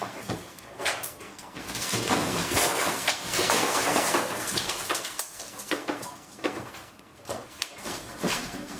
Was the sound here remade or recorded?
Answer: remade